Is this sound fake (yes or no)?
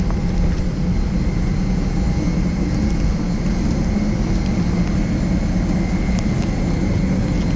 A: no